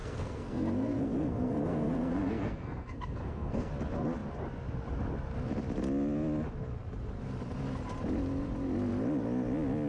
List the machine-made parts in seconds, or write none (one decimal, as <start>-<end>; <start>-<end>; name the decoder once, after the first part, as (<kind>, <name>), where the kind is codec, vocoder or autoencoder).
0.0-3.7 (codec, SNAC)